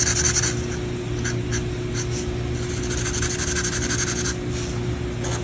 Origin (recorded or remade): recorded